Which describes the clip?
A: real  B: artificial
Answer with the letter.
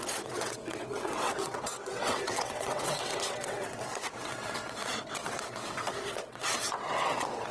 B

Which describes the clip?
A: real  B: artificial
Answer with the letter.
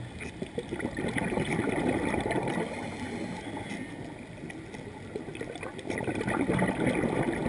A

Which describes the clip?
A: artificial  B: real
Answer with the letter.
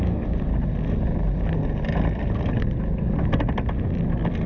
B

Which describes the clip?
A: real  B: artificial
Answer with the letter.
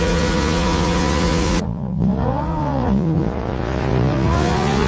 B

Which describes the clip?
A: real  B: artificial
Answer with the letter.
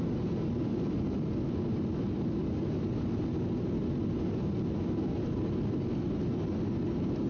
A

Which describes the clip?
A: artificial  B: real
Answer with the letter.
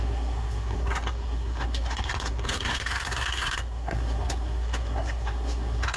A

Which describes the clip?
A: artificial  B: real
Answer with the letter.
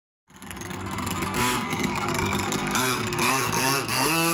A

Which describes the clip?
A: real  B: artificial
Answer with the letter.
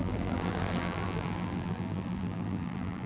B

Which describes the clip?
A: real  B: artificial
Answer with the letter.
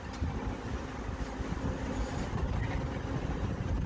A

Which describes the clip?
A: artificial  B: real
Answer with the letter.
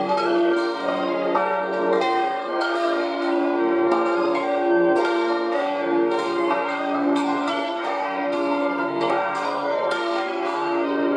A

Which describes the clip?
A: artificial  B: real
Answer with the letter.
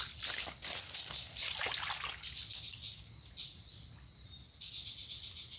B